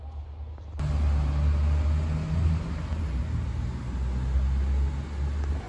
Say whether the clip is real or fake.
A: real